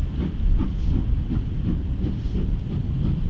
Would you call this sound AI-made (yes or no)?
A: no